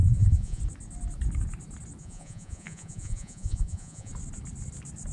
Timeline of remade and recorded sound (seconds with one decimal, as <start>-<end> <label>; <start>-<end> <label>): 0.0-0.6 remade; 0.6-2.0 recorded; 2.0-4.1 remade; 4.1-5.1 recorded